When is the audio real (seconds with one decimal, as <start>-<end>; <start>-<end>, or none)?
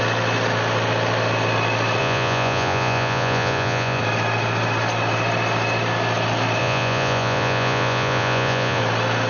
0.0-2.0; 4.0-6.6; 8.8-9.3